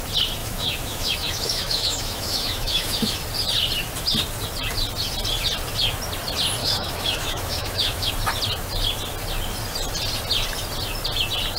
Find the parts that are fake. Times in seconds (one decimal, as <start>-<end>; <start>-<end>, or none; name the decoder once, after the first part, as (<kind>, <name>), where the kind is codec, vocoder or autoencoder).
0.4-3.2 (autoencoder, DAC-VAE); 6.6-8.1